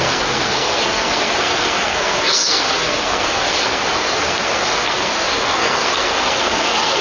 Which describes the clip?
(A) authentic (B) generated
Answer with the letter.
B